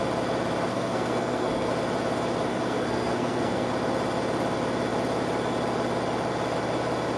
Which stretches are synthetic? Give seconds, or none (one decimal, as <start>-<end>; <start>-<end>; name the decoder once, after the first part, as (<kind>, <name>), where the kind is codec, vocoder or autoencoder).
0.7-1.7 (codec, SNAC); 2.5-3.7